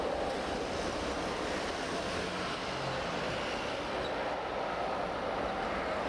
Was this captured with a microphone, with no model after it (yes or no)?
yes